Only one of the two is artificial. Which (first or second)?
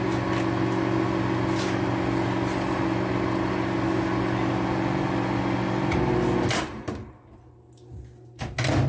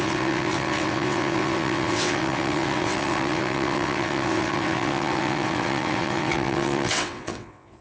second